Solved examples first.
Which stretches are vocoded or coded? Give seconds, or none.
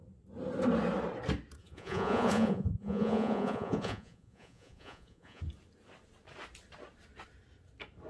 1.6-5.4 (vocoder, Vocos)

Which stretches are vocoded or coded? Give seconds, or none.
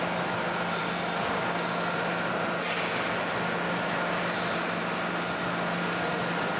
none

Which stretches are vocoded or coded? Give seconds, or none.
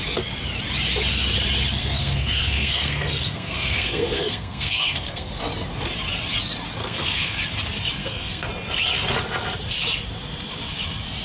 1.8-5.4 (codec, SNAC); 6.8-7.4; 8.0-8.5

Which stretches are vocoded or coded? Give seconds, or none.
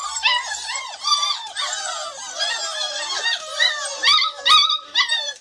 0.0-1.8 (vocoder, BigVGAN v2); 3.9-4.4